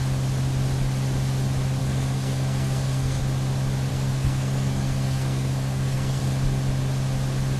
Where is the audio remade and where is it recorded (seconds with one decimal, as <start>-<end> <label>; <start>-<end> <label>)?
0.0-1.8 recorded; 1.8-3.2 remade; 3.2-3.9 recorded; 3.9-6.2 remade; 6.2-7.6 recorded